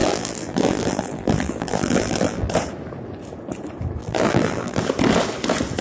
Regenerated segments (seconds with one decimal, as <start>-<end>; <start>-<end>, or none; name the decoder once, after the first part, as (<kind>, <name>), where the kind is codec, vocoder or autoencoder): 0.0-2.5 (vocoder, BigVGAN v2); 4.0-4.8